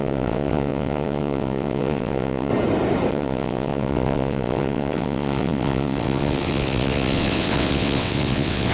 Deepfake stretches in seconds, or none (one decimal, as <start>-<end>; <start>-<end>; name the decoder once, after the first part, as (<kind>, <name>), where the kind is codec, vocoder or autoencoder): 0.0-2.5 (vocoder, WaveNeXt); 3.1-8.7